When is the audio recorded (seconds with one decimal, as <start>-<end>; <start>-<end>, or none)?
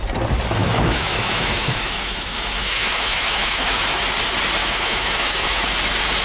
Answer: 0.0-0.6; 4.0-4.6; 5.7-6.2